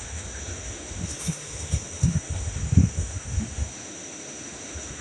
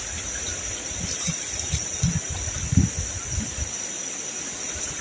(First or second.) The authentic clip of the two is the second